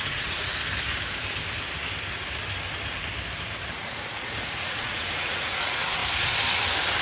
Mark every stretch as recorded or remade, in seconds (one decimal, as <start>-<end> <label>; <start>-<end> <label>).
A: 0.0-0.5 remade; 0.5-3.7 recorded; 3.7-6.0 remade; 6.0-7.0 recorded